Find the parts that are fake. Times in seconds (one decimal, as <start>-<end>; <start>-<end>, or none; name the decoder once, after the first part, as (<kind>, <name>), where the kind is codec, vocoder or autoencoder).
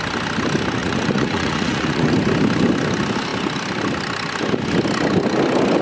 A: 0.8-2.1 (vocoder, Vocos)